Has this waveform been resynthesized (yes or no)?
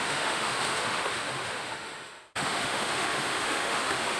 yes